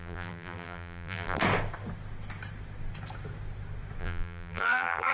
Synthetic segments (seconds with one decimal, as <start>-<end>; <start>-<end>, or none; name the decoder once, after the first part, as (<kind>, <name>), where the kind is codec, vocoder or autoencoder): 0.0-1.4 (vocoder, BigVGAN v2); 4.0-5.1